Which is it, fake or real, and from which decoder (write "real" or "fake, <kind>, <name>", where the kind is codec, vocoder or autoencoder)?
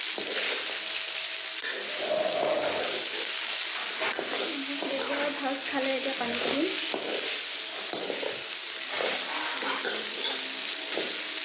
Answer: real